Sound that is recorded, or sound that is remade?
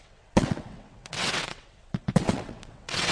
remade